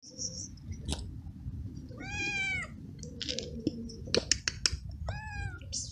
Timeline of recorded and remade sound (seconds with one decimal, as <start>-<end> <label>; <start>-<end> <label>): 0.0-5.9 recorded